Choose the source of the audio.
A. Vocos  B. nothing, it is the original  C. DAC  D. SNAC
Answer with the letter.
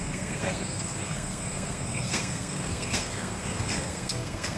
D